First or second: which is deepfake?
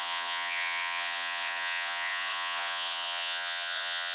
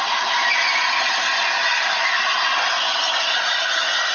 first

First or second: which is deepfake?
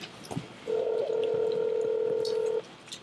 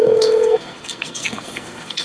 second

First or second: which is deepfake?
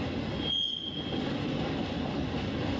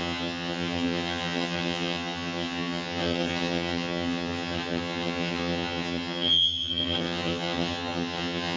second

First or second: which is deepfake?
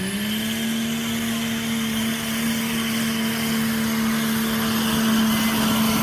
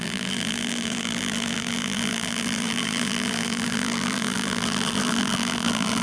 second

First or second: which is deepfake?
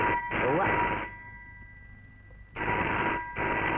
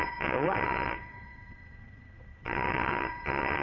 second